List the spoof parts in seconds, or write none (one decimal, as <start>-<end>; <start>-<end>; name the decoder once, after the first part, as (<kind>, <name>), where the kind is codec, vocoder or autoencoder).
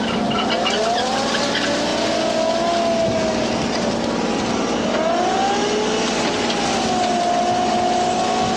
none